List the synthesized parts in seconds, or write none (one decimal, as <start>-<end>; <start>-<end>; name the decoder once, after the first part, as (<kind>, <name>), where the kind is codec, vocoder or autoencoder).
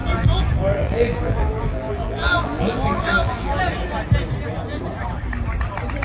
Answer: 0.0-3.6 (vocoder, BigVGAN v2)